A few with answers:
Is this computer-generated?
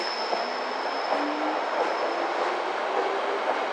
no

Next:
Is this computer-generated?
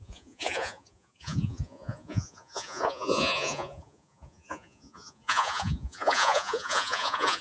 yes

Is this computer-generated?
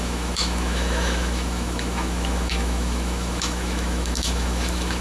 yes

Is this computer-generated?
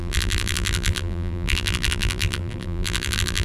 yes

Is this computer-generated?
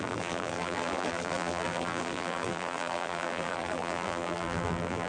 yes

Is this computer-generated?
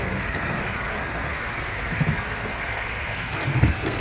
yes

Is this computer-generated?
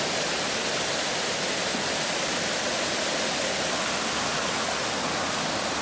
no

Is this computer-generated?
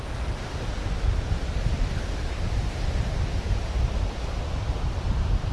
no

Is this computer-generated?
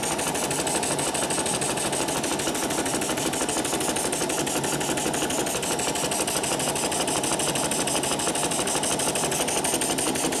no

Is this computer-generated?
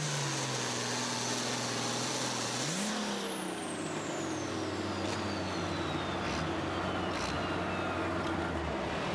no